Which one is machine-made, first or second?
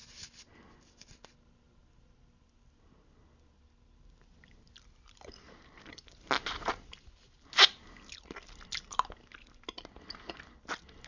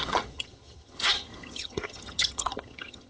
second